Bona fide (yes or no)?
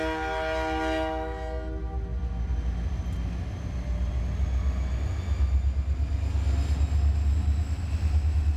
yes